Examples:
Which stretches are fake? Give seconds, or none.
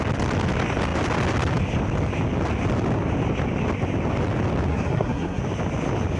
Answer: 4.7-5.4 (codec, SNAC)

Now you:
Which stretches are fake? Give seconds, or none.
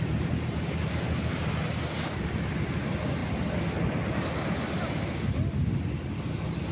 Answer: 0.0-1.4 (vocoder, BigVGAN v2); 2.1-3.2; 6.3-6.7